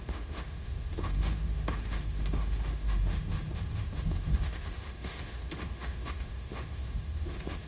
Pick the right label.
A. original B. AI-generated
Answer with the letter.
B